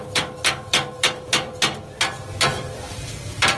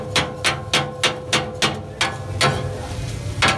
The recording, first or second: second